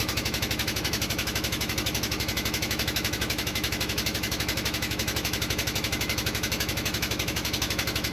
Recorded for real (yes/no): no